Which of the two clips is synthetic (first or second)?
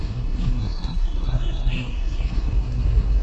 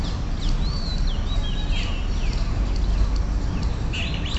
first